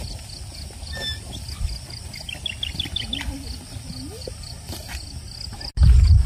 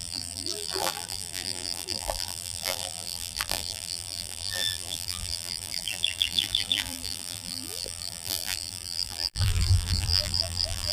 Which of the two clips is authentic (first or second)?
first